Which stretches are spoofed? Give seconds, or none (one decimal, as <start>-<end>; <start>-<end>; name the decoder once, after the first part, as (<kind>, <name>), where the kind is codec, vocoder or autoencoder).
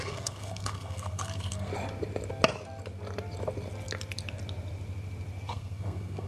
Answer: 0.0-1.7 (codec, SNAC); 5.5-6.3